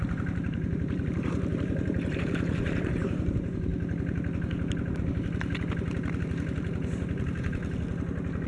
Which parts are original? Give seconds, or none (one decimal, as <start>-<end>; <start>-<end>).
3.7-6.2; 7.6-8.5